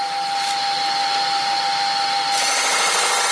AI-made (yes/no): no